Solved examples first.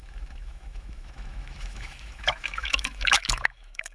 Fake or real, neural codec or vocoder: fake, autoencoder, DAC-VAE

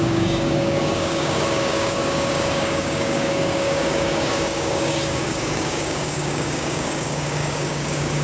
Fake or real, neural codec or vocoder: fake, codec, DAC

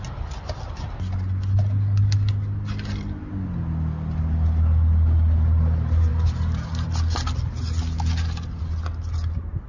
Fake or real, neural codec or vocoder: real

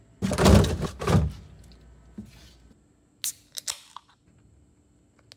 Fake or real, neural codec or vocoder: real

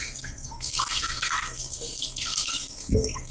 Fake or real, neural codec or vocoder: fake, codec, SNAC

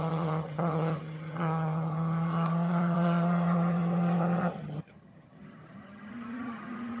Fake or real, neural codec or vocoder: fake, vocoder, HiFi-GAN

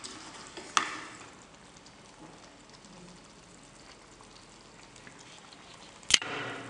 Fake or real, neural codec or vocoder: real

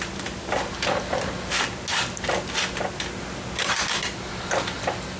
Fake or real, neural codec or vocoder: real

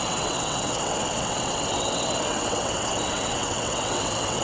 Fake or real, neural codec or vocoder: fake, vocoder, WaveNeXt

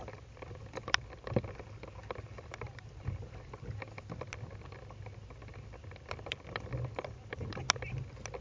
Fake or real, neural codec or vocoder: real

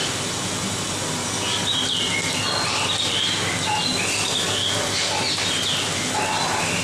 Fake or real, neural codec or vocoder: real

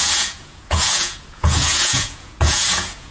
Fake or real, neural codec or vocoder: fake, vocoder, Vocos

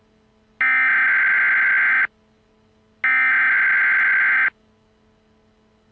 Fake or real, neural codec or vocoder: real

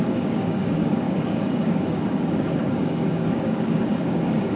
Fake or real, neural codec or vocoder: fake, codec, DAC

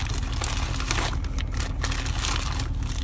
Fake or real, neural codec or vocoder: real